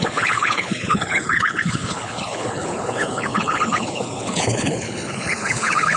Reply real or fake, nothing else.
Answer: fake